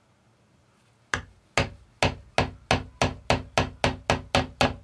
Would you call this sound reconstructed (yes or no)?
no